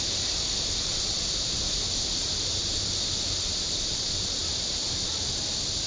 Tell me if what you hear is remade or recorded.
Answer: recorded